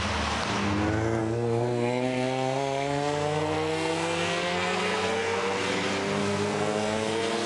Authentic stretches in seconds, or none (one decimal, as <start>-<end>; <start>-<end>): 0.0-1.2; 5.7-6.2